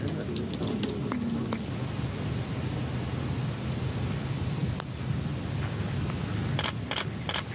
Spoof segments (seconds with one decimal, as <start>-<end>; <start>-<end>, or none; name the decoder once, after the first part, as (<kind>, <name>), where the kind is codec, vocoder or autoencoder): none